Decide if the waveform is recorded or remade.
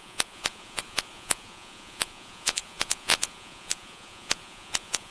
remade